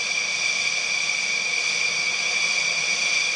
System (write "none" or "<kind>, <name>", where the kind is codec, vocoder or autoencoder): none